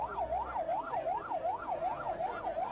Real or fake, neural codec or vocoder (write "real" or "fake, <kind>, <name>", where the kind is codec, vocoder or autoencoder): real